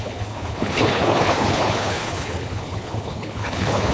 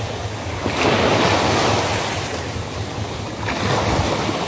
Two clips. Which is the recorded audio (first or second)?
second